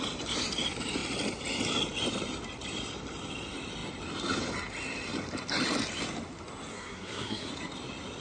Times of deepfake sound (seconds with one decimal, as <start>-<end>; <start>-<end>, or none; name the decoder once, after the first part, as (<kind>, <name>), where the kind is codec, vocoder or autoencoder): 6.7-7.5 (codec, SNAC)